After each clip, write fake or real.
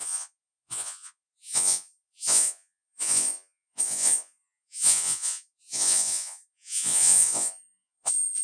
fake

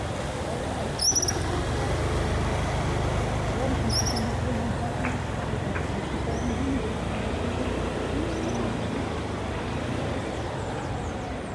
real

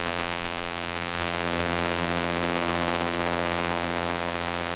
fake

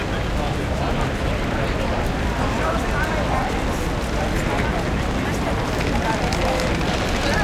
real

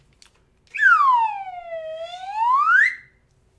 real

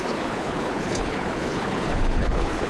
fake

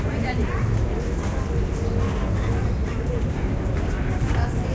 real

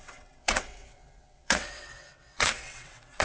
fake